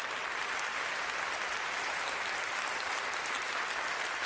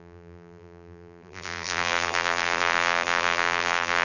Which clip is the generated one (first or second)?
second